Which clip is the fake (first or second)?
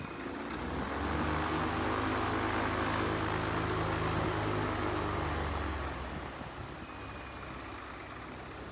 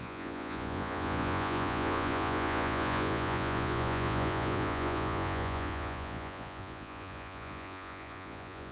second